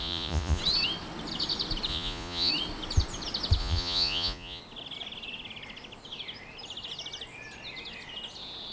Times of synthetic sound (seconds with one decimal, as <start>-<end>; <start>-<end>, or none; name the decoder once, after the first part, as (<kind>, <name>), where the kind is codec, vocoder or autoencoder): 0.0-0.6 (vocoder, Vocos); 1.9-2.5; 3.6-4.6